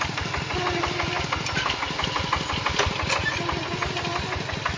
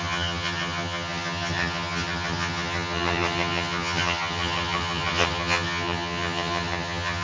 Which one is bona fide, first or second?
first